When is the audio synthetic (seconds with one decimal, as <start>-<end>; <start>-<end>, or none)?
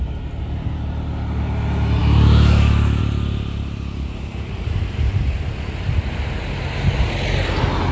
2.0-3.0